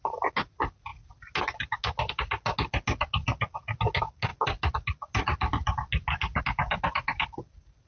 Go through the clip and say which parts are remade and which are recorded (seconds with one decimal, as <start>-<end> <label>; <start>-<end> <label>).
0.0-7.9 recorded